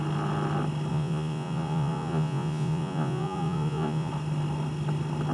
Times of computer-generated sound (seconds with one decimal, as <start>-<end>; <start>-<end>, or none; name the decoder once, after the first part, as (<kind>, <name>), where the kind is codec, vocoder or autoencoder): 0.9-4.1 (vocoder, Vocos)